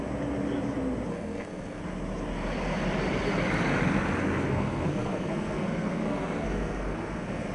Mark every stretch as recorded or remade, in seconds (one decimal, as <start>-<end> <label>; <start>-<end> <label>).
0.0-1.1 recorded; 1.1-1.8 remade; 1.8-4.5 recorded; 4.5-7.5 remade